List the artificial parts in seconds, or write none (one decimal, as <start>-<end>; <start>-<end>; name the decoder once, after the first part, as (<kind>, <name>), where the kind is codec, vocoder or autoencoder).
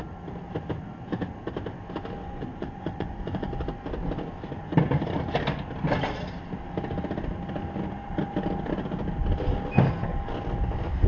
2.2-3.5 (vocoder, Vocos)